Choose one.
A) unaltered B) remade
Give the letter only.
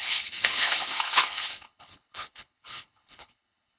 B